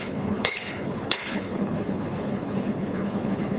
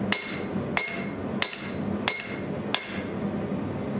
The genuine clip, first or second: second